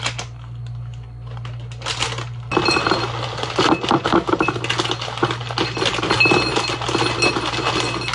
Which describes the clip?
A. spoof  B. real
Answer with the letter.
B